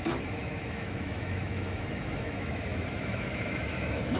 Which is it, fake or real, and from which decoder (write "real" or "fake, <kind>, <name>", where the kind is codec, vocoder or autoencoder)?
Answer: fake, autoencoder, DAC-VAE